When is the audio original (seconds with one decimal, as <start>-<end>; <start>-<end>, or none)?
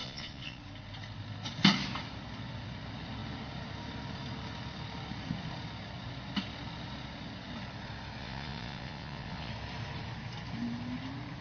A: 0.6-8.2; 9.5-11.4